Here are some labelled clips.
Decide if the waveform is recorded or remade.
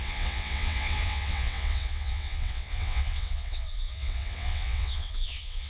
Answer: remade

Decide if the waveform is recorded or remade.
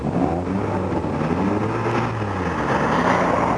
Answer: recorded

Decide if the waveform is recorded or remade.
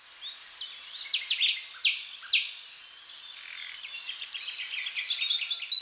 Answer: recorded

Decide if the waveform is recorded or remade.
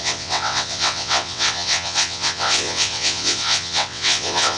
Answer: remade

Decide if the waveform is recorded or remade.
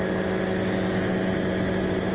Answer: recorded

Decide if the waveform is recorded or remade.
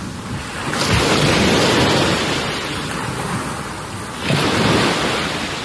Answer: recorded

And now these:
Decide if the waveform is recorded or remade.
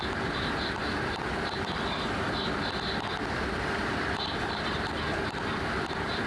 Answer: recorded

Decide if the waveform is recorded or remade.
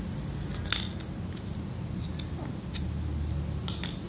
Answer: recorded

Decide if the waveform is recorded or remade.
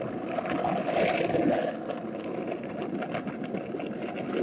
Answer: recorded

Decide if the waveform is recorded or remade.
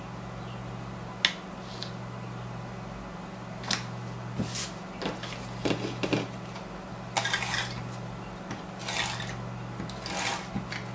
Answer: recorded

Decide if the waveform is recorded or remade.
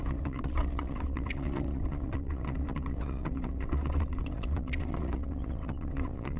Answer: remade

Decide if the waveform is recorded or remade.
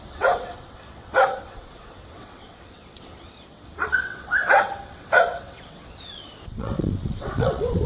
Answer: remade